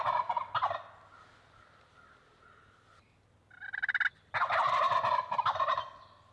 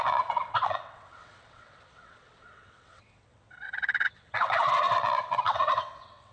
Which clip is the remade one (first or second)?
second